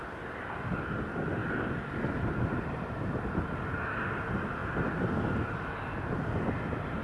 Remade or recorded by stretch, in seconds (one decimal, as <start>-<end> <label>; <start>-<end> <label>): 0.0-7.0 recorded